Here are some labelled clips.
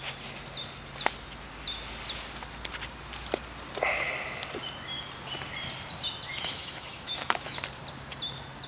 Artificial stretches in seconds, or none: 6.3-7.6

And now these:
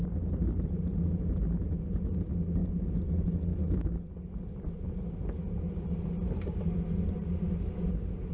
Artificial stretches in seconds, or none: none